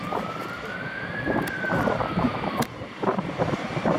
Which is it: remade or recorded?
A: recorded